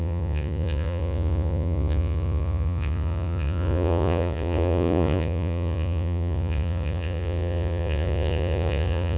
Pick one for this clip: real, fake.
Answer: fake